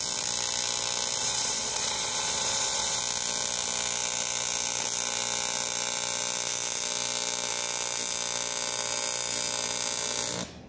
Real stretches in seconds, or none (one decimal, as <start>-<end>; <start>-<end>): 0.0-1.2; 3.0-10.7